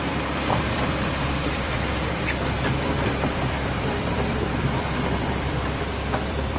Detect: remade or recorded remade